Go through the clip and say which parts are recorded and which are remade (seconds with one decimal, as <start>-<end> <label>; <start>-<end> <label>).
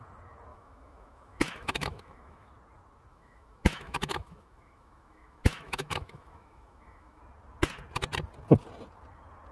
0.0-0.5 recorded; 0.5-2.5 remade; 2.5-3.1 recorded; 3.1-7.2 remade; 7.2-9.5 recorded